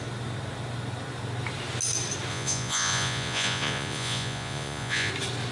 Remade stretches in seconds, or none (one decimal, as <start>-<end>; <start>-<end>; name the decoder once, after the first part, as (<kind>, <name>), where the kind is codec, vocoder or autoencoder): 2.3-5.1 (vocoder, Vocos)